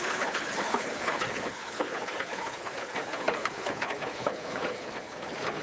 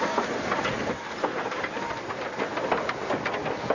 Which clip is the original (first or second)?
second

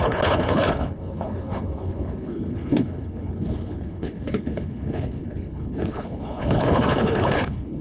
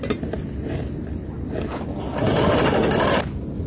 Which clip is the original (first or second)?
second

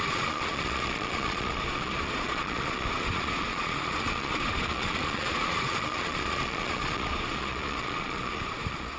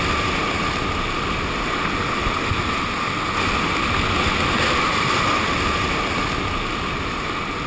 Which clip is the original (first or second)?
second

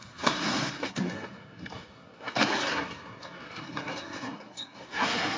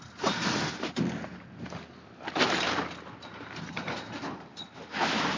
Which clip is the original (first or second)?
second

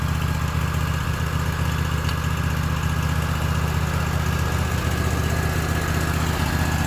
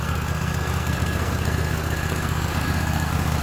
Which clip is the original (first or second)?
first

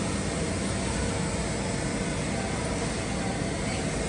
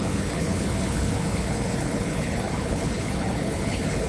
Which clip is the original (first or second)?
first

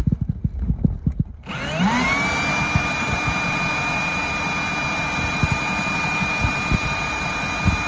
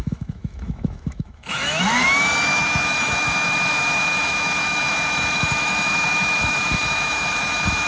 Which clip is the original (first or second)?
first